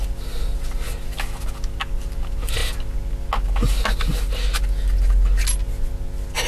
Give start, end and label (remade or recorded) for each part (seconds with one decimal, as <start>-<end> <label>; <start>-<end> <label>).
0.0-6.5 recorded